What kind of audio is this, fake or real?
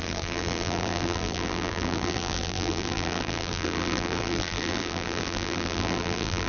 fake